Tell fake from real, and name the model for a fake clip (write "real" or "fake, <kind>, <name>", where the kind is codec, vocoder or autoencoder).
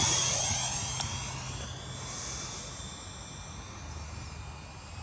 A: real